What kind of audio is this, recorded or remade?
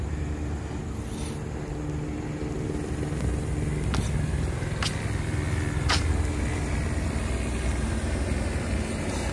recorded